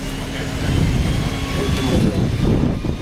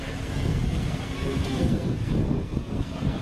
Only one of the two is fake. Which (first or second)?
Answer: second